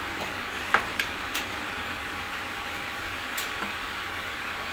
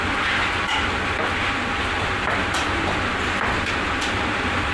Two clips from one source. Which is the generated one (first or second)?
first